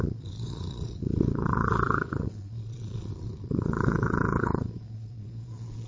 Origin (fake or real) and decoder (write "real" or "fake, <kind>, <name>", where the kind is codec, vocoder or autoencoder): fake, vocoder, Vocos